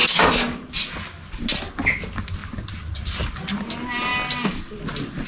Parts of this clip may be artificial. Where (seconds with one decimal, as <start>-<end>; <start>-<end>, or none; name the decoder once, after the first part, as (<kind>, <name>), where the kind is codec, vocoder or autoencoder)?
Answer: 2.4-3.3 (vocoder, BigVGAN v2)